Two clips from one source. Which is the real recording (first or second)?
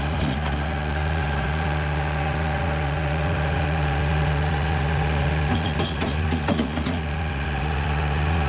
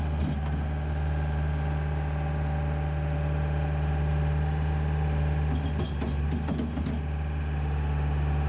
second